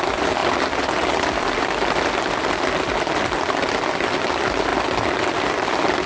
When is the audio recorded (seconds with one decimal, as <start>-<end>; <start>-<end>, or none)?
0.0-6.1